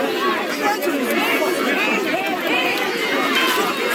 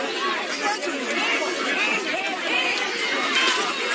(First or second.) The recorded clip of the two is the first